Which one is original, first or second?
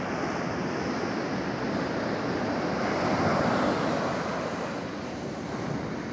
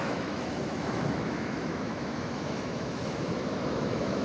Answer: first